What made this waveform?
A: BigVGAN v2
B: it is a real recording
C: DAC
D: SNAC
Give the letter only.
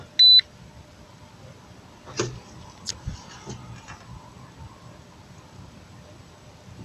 B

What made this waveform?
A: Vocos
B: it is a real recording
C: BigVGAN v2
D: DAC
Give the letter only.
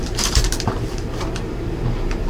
C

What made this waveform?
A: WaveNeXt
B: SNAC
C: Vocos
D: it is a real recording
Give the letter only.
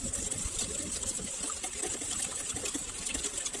D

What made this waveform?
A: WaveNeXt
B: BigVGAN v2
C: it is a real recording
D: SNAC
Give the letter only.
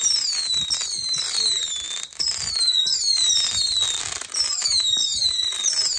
C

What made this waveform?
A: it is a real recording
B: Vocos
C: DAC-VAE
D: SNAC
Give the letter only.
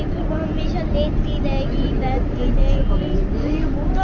A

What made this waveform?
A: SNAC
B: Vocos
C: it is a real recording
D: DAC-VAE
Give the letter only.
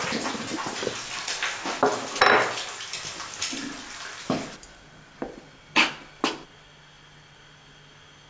C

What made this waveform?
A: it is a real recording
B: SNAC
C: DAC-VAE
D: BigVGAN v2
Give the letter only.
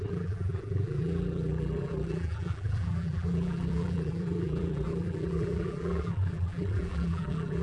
D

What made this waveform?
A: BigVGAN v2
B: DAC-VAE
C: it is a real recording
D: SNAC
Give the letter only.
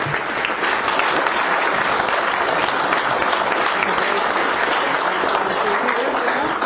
C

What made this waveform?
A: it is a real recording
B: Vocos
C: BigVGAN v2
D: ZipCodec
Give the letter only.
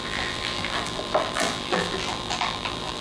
C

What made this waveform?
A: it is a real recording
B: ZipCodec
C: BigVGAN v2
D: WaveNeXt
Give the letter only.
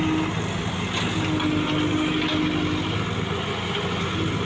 A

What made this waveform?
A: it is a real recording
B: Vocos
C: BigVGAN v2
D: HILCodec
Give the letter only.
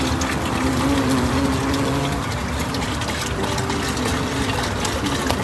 A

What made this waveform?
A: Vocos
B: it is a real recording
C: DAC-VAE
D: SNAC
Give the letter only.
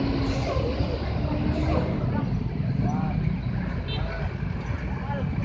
B